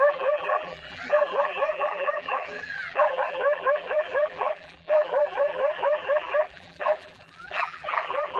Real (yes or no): no